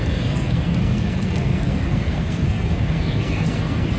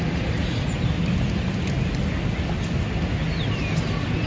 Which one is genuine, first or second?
second